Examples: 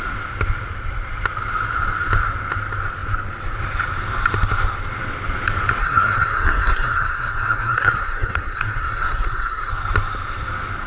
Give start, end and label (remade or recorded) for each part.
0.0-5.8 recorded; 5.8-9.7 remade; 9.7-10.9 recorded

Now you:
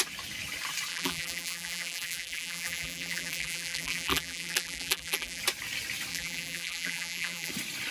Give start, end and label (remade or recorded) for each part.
0.0-0.9 recorded; 0.9-5.4 remade; 5.4-6.1 recorded; 6.1-7.5 remade; 7.5-7.9 recorded

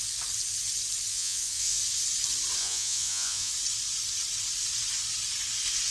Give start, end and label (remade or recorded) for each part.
0.0-1.1 recorded; 1.1-1.8 remade; 1.8-2.6 recorded; 2.6-3.5 remade; 3.5-5.9 recorded

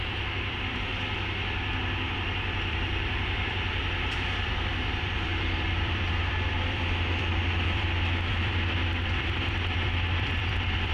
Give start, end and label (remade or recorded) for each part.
0.0-0.9 remade; 0.9-2.1 recorded; 2.1-10.9 remade

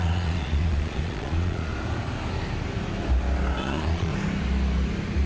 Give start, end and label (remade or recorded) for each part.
0.0-1.7 remade; 1.7-3.6 recorded; 3.6-4.1 remade; 4.1-5.3 recorded